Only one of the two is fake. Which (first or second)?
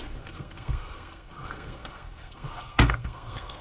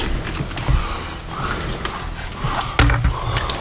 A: first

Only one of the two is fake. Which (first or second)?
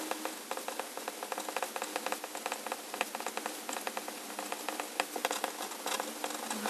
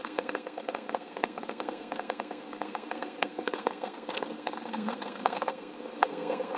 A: second